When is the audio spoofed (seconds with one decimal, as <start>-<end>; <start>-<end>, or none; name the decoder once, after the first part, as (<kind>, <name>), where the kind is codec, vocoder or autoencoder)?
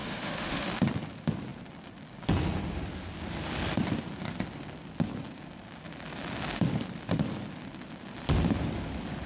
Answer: 0.0-0.7 (autoencoder, DAC-VAE)